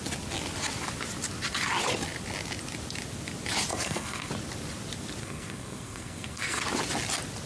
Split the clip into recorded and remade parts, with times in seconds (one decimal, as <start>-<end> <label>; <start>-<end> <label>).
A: 0.0-3.7 recorded; 3.7-4.3 remade; 4.3-5.2 recorded; 5.2-6.6 remade; 6.6-7.5 recorded